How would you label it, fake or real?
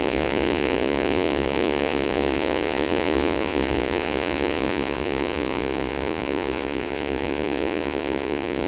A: fake